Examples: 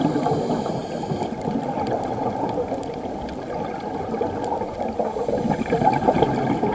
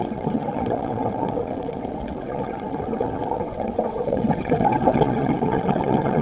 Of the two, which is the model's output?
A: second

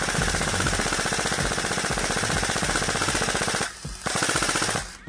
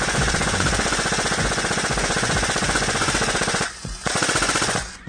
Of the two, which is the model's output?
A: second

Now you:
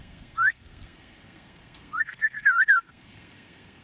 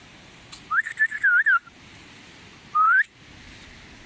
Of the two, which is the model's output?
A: first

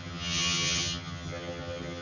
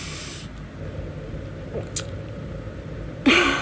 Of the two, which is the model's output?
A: first